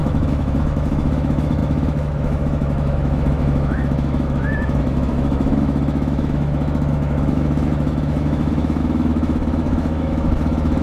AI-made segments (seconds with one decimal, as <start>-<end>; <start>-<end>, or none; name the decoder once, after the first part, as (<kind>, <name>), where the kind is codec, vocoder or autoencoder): 0.0-10.8 (autoencoder, DAC-VAE)